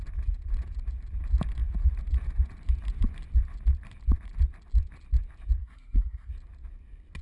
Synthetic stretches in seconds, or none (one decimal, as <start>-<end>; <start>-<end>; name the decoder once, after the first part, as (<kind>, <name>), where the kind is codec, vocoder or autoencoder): 5.6-6.3 (codec, SNAC)